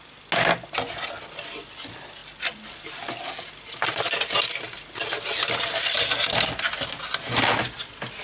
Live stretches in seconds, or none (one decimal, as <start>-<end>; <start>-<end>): 0.0-8.2